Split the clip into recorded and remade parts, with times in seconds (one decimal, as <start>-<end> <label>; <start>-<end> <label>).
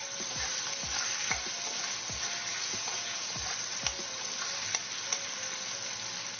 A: 0.0-2.5 recorded; 2.5-3.3 remade; 3.3-6.4 recorded